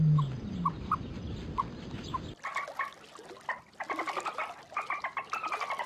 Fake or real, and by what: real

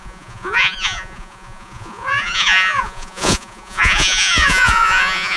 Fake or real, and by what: fake, vocoder, Vocos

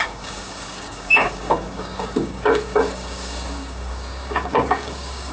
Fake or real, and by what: fake, codec, DAC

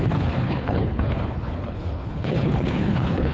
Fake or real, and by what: fake, codec, HILCodec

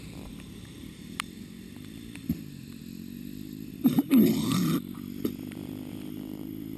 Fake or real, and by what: fake, vocoder, BigVGAN v2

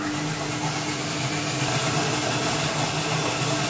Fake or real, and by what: real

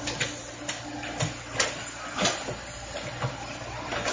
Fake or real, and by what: real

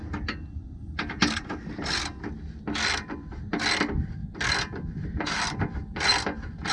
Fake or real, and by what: real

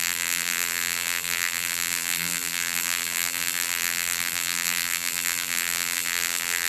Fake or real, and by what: fake, vocoder, BigVGAN v2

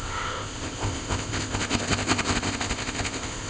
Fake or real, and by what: fake, codec, ZipCodec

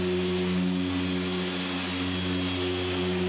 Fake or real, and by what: real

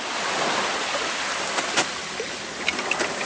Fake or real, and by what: real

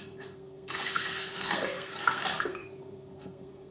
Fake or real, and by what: fake, codec, SNAC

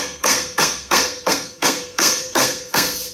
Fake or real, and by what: fake, codec, SNAC